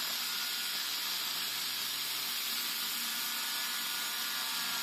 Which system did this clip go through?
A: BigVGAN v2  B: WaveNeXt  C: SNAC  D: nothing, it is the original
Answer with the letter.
D